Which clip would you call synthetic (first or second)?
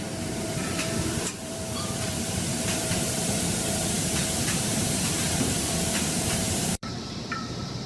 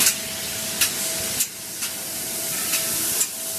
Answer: first